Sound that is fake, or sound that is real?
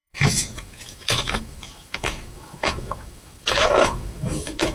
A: fake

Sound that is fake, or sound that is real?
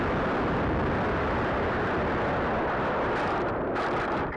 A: real